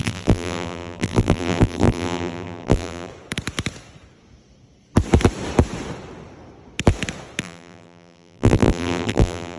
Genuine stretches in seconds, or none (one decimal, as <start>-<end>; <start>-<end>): 3.1-7.4